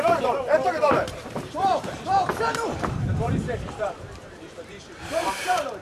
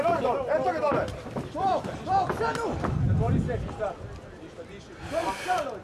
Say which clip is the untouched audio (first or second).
second